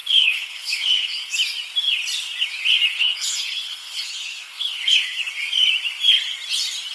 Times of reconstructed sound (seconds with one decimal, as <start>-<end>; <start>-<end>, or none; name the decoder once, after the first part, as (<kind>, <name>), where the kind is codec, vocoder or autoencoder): 0.0-1.3 (codec, HILCodec); 2.9-5.3